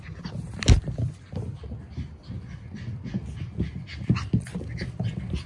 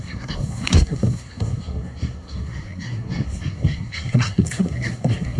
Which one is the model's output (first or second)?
second